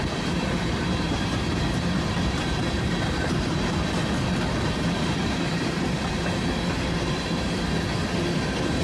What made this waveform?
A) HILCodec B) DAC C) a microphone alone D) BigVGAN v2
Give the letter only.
D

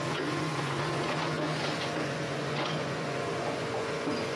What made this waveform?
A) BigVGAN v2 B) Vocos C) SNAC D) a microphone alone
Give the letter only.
B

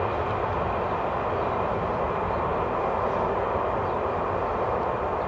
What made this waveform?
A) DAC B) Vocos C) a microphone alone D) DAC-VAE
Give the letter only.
C